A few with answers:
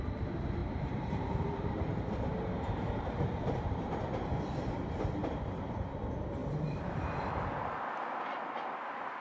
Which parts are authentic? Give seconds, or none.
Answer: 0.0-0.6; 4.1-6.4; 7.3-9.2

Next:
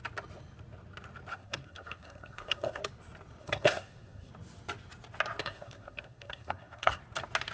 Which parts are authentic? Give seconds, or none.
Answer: 0.0-1.3; 2.8-3.4; 4.3-5.4; 7.0-7.5

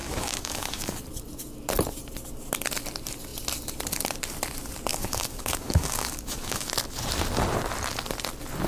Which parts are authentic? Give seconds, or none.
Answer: 1.0-4.9; 6.7-8.7